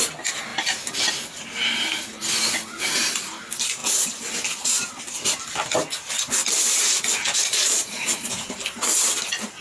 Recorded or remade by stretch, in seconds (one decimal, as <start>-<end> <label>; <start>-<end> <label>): 0.0-7.4 recorded; 7.4-8.3 remade; 8.3-9.6 recorded